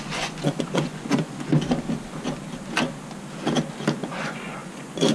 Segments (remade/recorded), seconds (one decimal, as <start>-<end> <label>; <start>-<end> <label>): 0.0-1.5 remade; 1.5-4.0 recorded; 4.0-5.1 remade